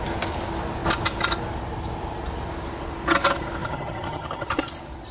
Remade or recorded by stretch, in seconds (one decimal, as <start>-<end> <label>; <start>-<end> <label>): 0.0-3.6 recorded; 3.6-4.6 remade; 4.6-5.1 recorded